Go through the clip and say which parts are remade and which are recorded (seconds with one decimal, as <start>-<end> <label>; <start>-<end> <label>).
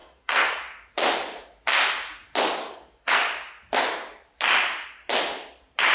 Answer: 0.0-0.6 remade; 0.6-2.6 recorded; 2.6-3.2 remade; 3.2-5.9 recorded